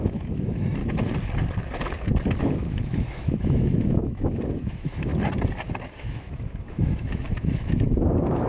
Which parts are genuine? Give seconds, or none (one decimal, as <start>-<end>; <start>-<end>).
0.8-2.4; 5.1-5.9